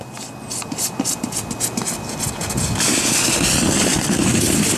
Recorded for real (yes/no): yes